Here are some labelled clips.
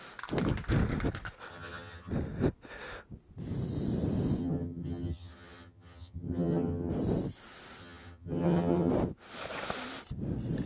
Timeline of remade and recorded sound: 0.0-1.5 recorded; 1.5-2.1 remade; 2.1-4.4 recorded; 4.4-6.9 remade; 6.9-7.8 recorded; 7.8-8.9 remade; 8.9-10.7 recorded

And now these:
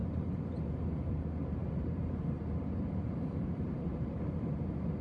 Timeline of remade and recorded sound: 0.0-1.1 remade; 1.1-1.6 recorded; 1.6-4.6 remade; 4.6-5.0 recorded